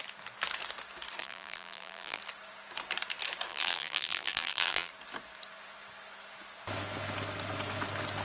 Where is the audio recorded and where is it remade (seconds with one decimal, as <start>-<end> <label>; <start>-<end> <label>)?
0.0-1.2 recorded; 1.2-2.2 remade; 2.2-3.5 recorded; 3.5-4.9 remade; 4.9-8.2 recorded